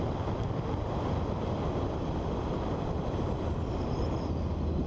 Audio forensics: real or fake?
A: real